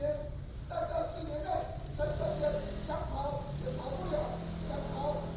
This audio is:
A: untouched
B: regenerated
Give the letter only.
A